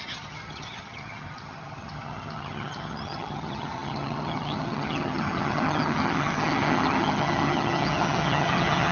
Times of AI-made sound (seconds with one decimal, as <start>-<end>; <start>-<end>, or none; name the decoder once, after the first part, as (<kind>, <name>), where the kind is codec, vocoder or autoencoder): 0.0-8.9 (vocoder, HiFi-GAN)